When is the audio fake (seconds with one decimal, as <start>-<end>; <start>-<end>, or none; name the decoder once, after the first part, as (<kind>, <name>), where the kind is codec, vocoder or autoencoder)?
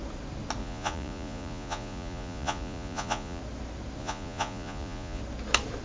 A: 0.6-3.4 (vocoder, Vocos); 4.0-5.2